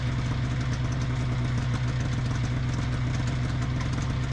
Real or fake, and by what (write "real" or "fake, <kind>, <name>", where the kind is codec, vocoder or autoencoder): real